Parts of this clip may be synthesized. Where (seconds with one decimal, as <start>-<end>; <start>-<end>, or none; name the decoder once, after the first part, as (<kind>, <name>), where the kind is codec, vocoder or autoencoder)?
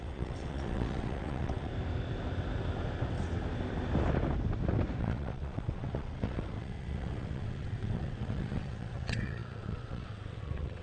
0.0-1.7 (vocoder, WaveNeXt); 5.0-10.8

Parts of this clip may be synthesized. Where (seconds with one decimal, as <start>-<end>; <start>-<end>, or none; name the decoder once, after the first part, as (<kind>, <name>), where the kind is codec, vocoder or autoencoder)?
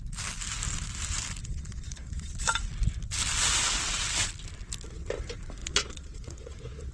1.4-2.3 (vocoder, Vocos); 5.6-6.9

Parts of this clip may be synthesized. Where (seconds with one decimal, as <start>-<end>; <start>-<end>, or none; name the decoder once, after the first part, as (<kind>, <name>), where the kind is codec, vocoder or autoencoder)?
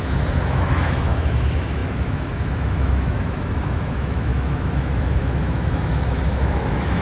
0.0-7.0 (autoencoder, DAC-VAE)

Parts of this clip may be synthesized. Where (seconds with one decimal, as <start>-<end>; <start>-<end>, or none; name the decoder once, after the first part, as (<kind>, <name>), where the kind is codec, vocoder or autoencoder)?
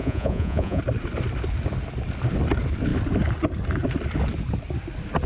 0.0-0.8 (vocoder, Vocos)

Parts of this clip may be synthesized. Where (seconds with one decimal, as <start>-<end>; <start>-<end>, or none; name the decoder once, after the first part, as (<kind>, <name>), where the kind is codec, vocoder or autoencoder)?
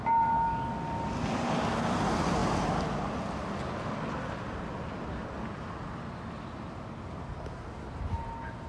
none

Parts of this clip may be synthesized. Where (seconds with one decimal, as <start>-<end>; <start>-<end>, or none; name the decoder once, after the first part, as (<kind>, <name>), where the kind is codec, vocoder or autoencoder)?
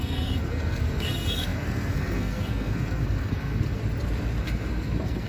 0.0-3.8 (codec, SNAC); 4.4-5.3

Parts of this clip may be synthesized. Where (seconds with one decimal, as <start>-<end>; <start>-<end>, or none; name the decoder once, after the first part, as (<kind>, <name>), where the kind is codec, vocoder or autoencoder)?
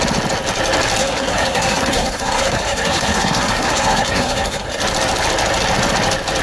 1.0-4.8 (codec, SNAC)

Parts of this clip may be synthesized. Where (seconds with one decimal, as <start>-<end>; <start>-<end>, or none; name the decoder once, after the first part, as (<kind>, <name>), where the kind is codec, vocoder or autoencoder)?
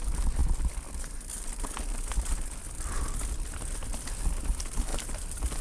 none